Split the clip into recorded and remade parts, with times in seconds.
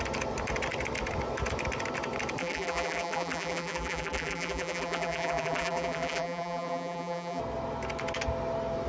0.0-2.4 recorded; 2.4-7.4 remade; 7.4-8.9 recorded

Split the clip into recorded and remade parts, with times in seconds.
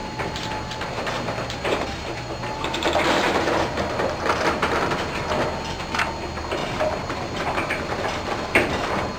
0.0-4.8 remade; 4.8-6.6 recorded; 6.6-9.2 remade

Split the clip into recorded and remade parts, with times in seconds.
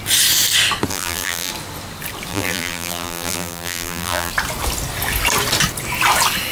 0.0-0.9 recorded; 0.9-1.5 remade; 1.5-2.3 recorded; 2.3-4.3 remade; 4.3-6.5 recorded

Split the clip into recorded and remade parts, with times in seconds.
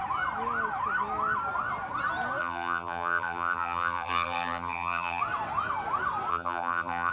0.0-2.4 recorded; 2.4-5.2 remade; 5.2-6.3 recorded; 6.3-7.1 remade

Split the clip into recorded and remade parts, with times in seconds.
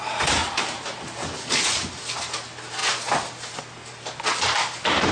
0.0-0.4 recorded; 0.4-1.0 remade; 1.0-5.1 recorded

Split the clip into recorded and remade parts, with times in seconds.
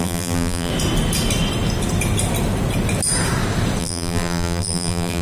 0.0-0.7 remade; 0.7-3.8 recorded; 3.8-5.2 remade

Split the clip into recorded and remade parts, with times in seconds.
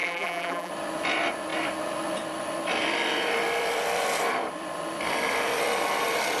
0.0-0.7 remade; 0.7-6.4 recorded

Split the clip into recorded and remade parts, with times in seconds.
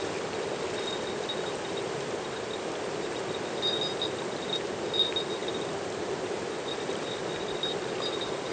0.0-8.5 recorded